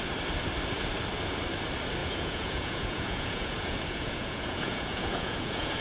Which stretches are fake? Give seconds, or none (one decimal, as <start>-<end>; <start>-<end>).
2.0-5.8